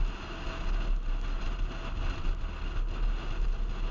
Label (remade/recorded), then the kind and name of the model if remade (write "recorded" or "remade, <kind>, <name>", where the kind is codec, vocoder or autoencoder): recorded